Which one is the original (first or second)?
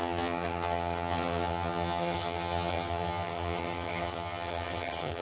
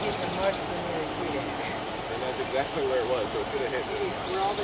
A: second